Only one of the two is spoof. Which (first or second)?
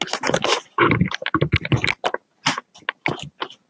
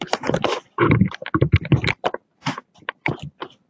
second